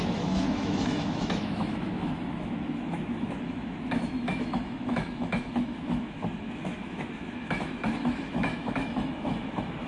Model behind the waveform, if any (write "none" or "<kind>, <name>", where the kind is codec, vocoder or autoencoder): autoencoder, DAC-VAE